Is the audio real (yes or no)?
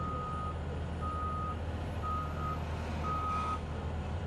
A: yes